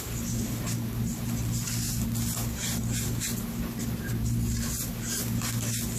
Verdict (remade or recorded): recorded